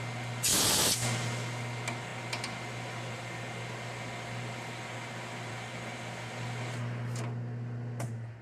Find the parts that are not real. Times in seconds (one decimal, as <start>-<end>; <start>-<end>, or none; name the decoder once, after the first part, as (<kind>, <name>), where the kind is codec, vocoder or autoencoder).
none